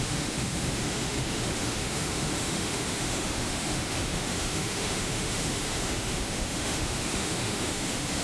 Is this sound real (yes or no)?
no